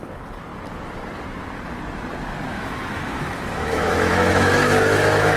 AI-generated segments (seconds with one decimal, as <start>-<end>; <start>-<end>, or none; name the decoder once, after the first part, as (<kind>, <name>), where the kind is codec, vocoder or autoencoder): 2.5-5.4 (autoencoder, DAC-VAE)